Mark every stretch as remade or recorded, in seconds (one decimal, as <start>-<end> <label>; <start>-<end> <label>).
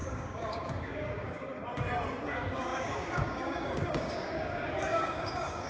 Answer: 0.0-1.6 remade; 1.6-2.2 recorded; 2.2-5.7 remade